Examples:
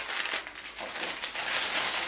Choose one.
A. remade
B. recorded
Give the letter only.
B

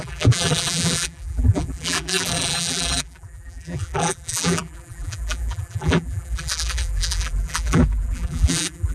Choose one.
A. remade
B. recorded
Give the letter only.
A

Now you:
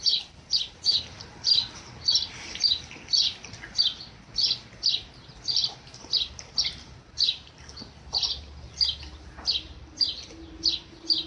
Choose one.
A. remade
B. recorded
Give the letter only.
B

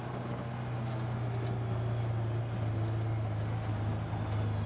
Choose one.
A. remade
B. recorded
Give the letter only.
B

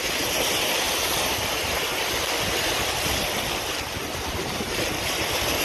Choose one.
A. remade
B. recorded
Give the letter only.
B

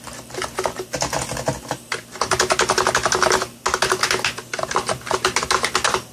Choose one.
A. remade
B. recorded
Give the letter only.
B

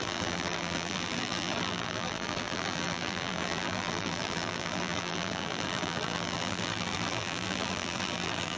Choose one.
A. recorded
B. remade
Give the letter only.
B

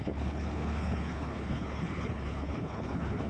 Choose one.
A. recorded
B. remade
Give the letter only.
B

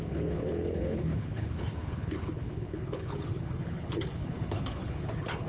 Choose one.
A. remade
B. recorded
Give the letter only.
A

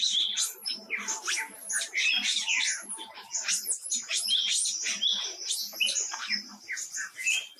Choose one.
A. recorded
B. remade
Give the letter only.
A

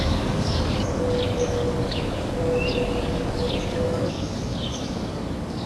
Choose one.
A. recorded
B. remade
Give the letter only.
B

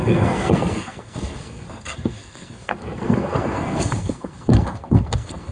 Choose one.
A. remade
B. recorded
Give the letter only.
A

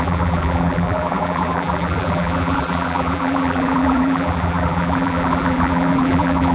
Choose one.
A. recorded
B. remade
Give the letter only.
B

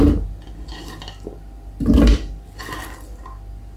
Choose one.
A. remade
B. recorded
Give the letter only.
B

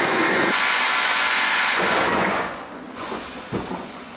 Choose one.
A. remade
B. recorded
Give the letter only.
A